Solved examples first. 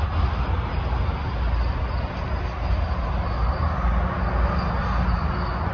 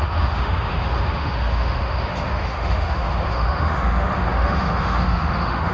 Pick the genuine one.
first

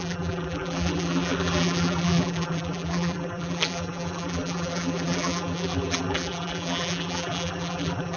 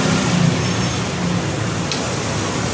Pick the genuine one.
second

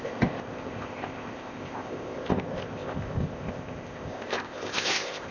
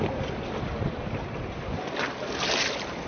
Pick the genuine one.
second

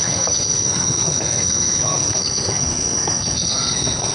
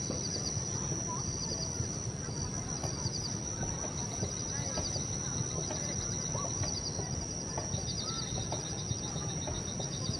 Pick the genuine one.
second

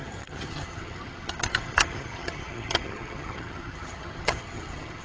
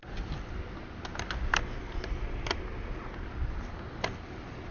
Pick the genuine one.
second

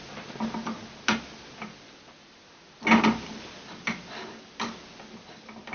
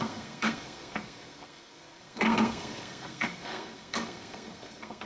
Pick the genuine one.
first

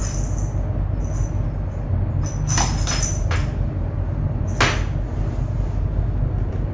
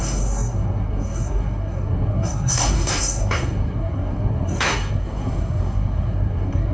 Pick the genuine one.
first